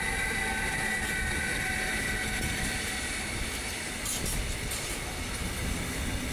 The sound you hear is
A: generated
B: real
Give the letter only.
B